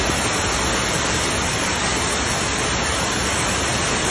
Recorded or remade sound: recorded